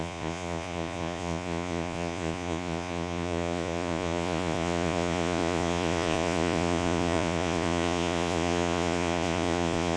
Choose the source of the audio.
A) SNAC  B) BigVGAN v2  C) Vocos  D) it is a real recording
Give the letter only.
C